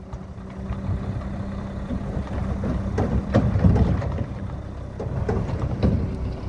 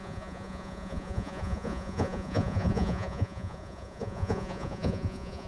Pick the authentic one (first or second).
first